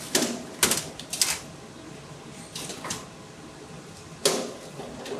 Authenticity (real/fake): real